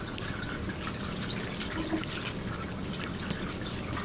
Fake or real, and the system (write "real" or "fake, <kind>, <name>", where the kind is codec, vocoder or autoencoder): real